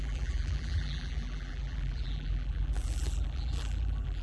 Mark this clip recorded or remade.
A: remade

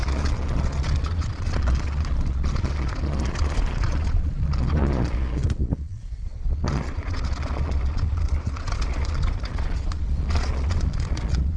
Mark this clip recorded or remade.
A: remade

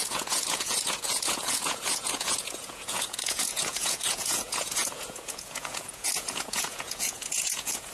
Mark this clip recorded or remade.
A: remade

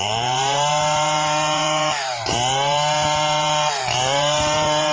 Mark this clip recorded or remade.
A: remade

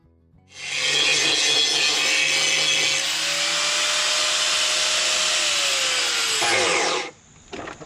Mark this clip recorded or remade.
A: recorded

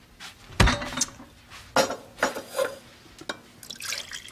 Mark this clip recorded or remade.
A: recorded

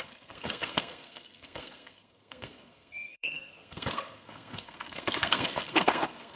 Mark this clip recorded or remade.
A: remade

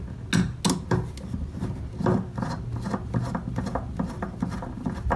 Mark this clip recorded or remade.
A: recorded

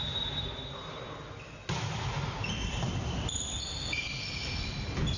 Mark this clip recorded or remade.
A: recorded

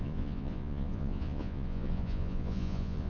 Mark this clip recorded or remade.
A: remade